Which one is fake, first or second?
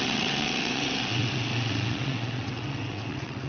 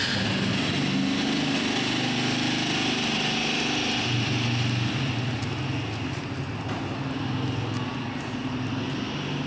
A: first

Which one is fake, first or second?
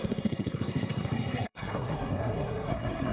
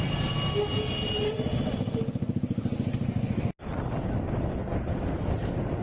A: first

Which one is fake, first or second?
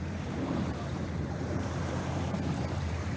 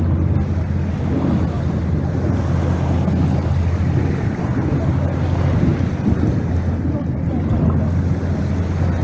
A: first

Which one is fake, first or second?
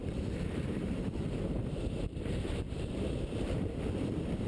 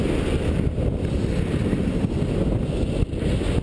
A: first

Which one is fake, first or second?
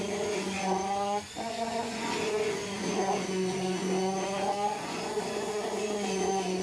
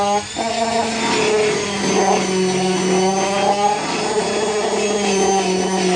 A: first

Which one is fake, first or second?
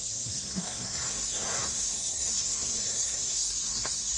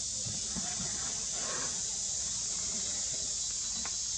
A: first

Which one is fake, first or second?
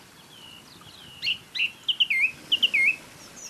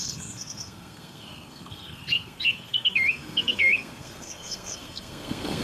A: second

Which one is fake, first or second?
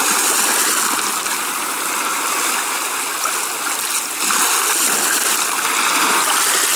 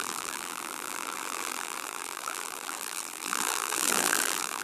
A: second